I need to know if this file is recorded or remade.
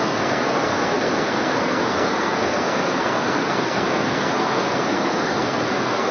remade